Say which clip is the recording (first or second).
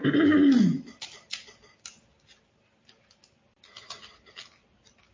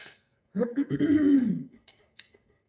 first